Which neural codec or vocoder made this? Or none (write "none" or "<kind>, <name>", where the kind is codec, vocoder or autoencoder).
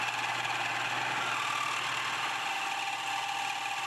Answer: none